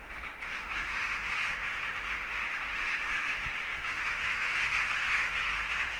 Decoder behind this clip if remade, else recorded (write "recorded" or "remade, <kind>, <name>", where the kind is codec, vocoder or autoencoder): remade, autoencoder, DAC-VAE